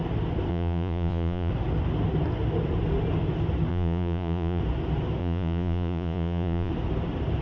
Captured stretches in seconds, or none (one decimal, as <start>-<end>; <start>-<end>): 0.0-0.5; 1.5-3.7; 4.6-5.2; 6.7-7.4